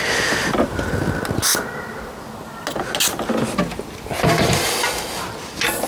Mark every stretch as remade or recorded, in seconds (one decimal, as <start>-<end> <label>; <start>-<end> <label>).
0.0-5.9 recorded